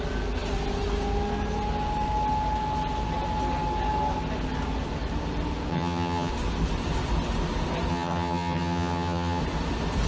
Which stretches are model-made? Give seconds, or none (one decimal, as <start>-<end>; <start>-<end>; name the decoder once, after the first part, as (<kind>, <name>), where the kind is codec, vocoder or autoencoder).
5.7-6.3 (vocoder, HiFi-GAN); 7.9-9.4